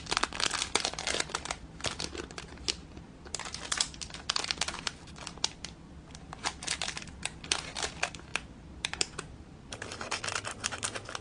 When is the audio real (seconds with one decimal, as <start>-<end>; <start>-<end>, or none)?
0.0-11.2